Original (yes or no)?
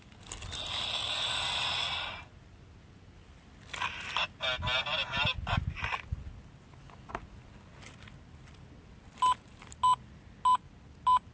yes